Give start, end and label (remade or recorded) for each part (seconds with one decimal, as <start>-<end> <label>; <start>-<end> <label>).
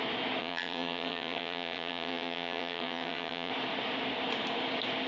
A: 0.0-0.4 recorded; 0.4-3.5 remade; 3.5-5.1 recorded